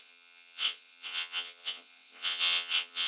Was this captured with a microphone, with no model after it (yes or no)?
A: no